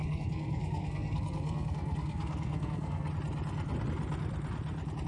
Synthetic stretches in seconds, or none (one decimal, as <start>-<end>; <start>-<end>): 0.0-3.1